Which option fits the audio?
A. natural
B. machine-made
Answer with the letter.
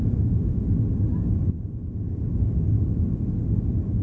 A